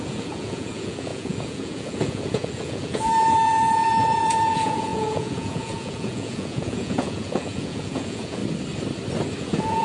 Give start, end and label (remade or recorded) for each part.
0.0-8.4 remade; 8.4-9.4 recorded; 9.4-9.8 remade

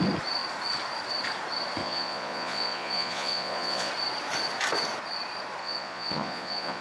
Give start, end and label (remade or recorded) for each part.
0.0-1.8 recorded; 1.8-3.9 remade; 3.9-5.6 recorded; 5.6-6.8 remade

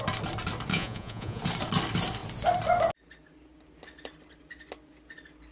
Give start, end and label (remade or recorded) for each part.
0.0-0.7 recorded; 0.7-1.4 remade; 1.4-5.5 recorded